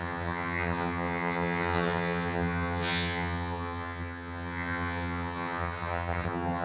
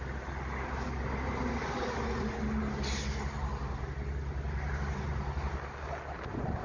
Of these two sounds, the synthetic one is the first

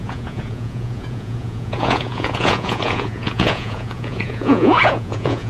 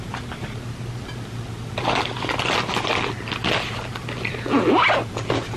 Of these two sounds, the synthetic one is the first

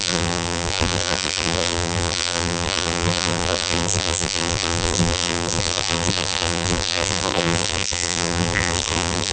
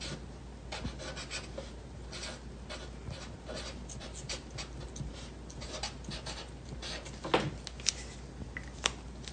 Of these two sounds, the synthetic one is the first